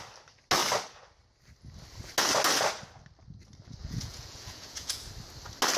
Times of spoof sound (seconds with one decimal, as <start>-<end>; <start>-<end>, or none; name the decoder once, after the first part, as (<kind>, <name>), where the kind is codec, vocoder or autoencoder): 3.8-5.0 (vocoder, Vocos)